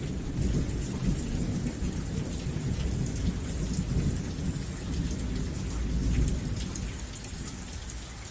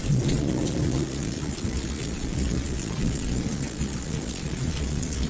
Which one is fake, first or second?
second